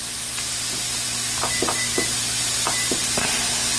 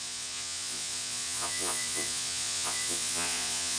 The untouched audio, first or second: first